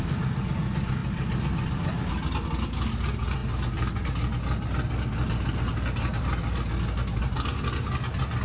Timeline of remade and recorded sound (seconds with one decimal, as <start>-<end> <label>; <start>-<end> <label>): 0.0-8.4 recorded